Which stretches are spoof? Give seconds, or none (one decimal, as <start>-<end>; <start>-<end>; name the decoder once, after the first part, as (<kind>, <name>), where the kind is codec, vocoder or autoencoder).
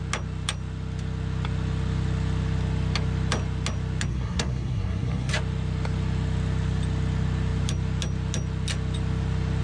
4.1-5.3 (codec, SNAC)